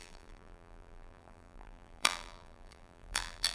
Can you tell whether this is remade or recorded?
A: remade